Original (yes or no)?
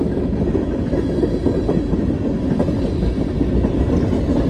yes